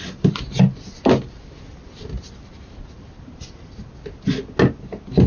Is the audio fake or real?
real